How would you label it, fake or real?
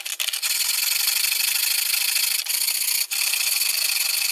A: real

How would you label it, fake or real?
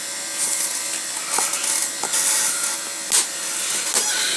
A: real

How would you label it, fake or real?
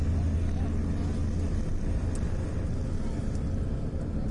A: real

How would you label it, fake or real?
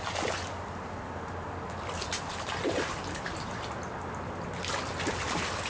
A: real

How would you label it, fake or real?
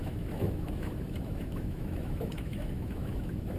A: fake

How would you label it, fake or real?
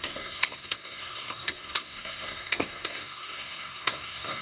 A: fake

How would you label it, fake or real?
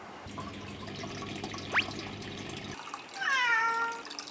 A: real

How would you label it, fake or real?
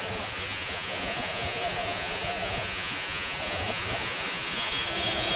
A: fake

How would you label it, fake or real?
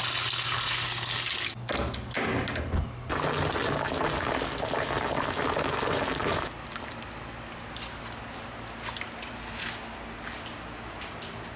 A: real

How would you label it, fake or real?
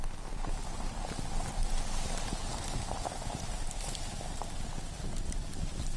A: real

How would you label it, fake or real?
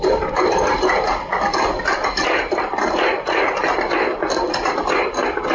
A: fake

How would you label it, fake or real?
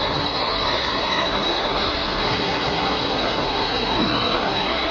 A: fake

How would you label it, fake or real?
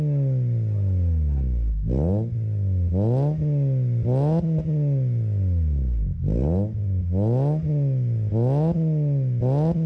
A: real